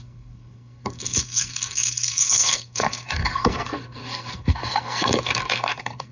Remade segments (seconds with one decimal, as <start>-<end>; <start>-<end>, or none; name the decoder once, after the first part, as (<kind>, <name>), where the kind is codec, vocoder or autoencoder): 0.0-6.1 (codec, SNAC)